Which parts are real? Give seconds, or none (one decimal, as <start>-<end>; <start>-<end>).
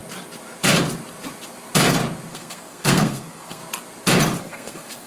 0.0-2.3; 3.6-4.4